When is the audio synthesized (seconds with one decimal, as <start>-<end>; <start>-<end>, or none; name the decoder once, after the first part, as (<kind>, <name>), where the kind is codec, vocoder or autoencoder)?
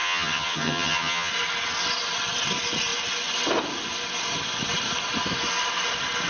0.0-1.3 (vocoder, HiFi-GAN)